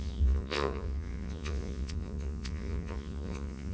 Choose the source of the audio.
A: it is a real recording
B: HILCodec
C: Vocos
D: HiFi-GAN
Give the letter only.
C